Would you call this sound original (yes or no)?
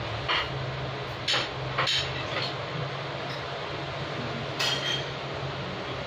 yes